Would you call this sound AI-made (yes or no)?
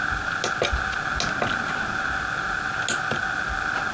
no